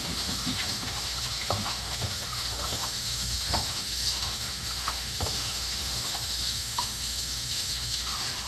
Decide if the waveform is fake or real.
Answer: fake